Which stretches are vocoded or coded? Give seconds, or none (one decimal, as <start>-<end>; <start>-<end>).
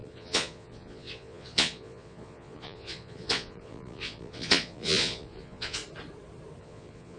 0.0-5.8; 6.6-7.2